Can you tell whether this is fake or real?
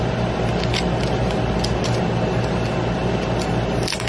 real